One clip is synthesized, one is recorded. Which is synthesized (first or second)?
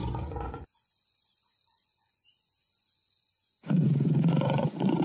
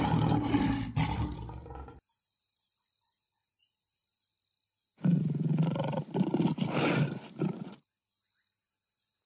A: first